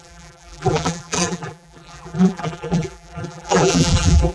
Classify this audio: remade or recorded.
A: remade